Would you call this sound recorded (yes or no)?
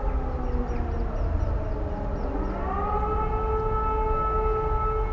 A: yes